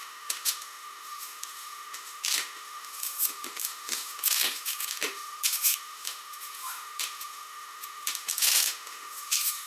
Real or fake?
fake